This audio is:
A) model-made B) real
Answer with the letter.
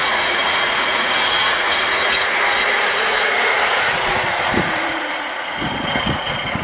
A